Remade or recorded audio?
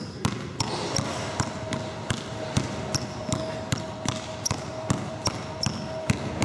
recorded